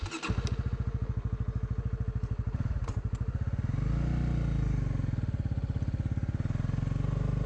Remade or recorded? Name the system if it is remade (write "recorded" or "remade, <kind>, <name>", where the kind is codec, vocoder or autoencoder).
recorded